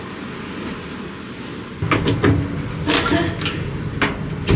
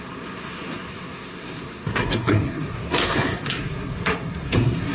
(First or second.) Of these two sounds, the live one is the first